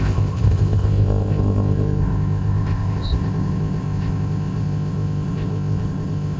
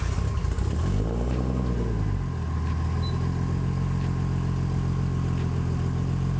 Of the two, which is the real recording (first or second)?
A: second